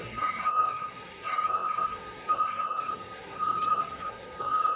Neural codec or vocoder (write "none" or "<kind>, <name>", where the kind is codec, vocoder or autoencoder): codec, SNAC